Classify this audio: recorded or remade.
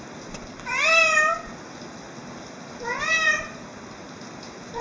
recorded